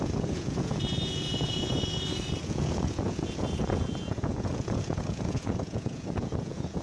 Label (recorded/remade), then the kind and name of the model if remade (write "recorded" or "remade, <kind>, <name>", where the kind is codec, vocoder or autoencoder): remade, vocoder, Vocos